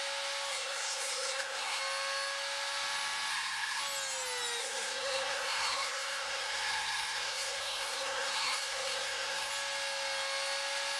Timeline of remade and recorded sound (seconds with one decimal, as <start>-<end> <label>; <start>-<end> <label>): 0.0-0.5 recorded; 0.5-1.8 remade; 1.8-3.3 recorded; 3.3-3.8 remade; 3.8-4.6 recorded; 4.6-9.5 remade; 9.5-11.0 recorded